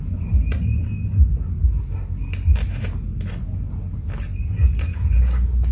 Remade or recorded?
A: recorded